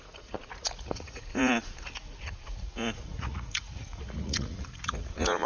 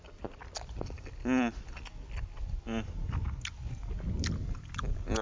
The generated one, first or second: first